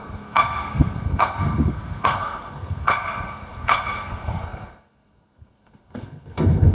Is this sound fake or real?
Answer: fake